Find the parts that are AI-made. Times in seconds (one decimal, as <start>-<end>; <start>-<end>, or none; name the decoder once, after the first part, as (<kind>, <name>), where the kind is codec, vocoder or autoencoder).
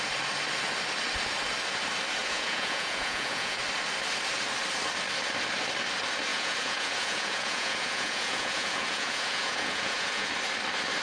2.2-3.6 (vocoder, Vocos); 6.3-10.3